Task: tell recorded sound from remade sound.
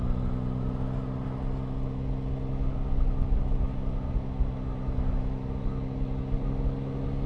recorded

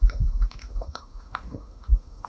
remade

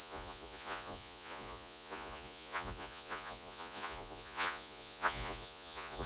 remade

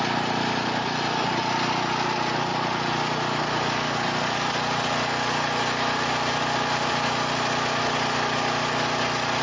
recorded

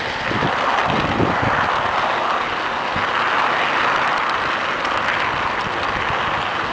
recorded